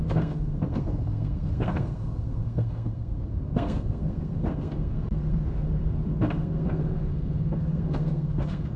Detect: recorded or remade remade